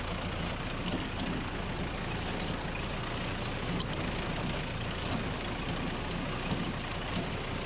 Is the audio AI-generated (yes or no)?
no